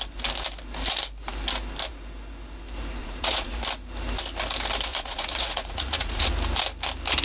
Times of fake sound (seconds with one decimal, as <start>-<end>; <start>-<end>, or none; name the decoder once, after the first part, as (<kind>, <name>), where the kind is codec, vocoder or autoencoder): 3.0-3.6 (vocoder, Vocos); 4.9-6.3